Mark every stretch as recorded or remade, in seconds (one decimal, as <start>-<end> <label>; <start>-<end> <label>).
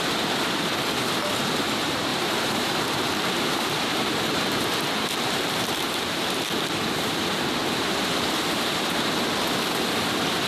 0.0-2.1 recorded; 2.1-6.4 remade; 6.4-7.6 recorded; 7.6-9.2 remade; 9.2-10.5 recorded